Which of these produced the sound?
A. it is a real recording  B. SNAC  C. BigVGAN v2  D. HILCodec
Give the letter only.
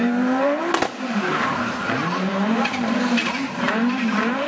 C